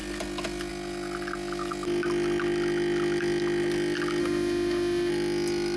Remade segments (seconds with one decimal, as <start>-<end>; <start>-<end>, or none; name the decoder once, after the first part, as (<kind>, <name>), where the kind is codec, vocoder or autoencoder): 4.2-5.1 (autoencoder, DAC-VAE)